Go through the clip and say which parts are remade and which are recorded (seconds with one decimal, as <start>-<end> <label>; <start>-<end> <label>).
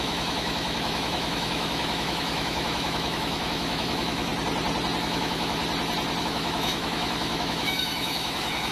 0.0-4.3 remade; 4.3-5.0 recorded; 5.0-5.6 remade; 5.6-6.2 recorded; 6.2-8.7 remade